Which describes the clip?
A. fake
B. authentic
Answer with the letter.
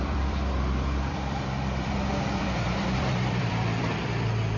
A